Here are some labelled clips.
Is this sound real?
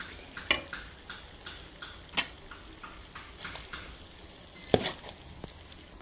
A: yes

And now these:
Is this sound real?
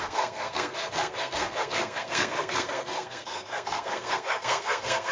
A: no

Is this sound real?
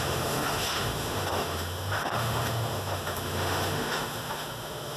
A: no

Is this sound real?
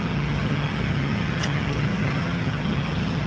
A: no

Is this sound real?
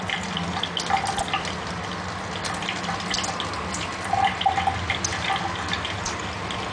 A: yes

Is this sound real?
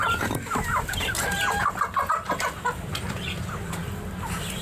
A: yes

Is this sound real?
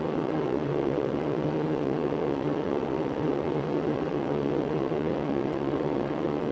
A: no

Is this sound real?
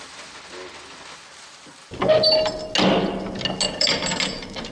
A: yes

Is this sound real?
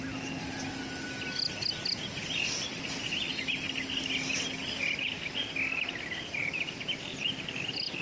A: yes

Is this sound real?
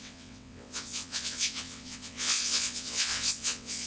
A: no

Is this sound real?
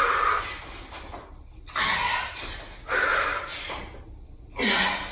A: yes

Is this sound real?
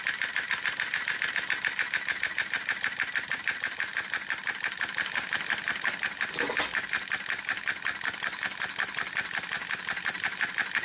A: yes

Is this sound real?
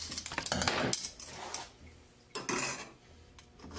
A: yes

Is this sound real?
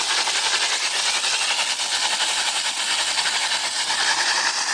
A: yes